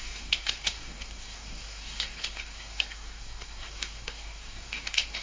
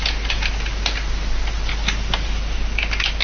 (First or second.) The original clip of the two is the second